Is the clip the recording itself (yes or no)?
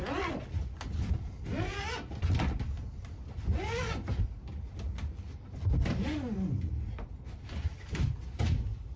yes